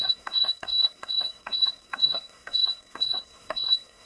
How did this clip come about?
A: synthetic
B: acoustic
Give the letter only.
A